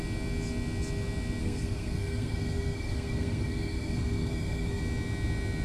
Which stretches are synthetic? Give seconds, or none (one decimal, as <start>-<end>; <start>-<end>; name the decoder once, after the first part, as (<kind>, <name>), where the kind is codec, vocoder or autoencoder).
1.4-4.8 (codec, SNAC)